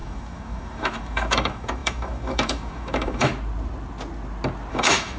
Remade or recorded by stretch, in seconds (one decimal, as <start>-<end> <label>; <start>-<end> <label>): 0.0-3.3 remade; 3.3-4.7 recorded; 4.7-5.2 remade